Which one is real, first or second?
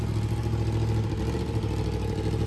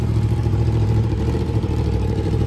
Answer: first